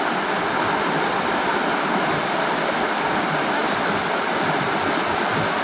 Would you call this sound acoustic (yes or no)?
yes